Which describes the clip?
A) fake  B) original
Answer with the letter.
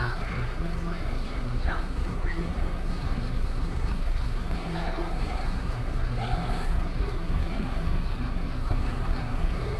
A